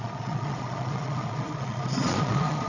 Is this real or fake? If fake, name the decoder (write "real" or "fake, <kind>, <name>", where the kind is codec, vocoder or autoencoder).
fake, vocoder, Vocos